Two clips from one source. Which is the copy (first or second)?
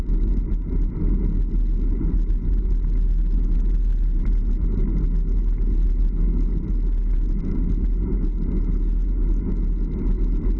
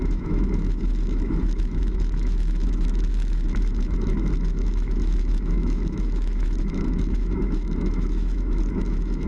second